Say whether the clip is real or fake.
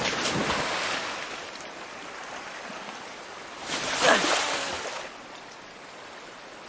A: fake